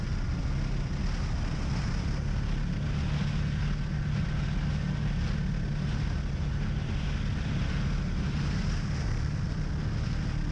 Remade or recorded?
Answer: recorded